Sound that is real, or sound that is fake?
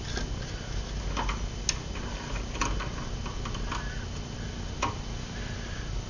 real